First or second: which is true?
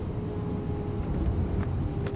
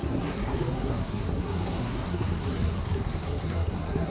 first